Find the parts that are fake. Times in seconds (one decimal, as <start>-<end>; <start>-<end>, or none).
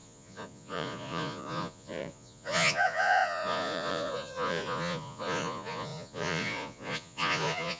0.0-7.8